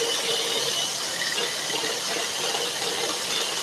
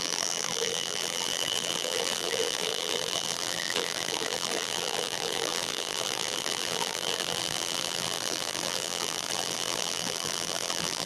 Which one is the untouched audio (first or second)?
first